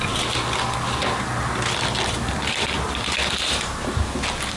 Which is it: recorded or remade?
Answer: recorded